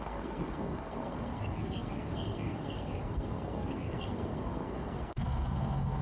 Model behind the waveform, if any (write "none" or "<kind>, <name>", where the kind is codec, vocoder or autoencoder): codec, SNAC